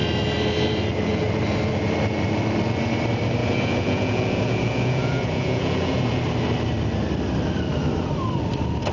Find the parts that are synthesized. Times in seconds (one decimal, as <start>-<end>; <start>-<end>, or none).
3.4-6.2